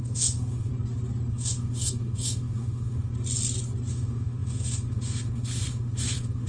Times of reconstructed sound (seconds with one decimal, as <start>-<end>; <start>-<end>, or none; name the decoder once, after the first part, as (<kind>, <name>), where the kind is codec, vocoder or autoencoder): 0.0-0.7 (autoencoder, DAC-VAE); 1.3-3.1; 3.9-6.5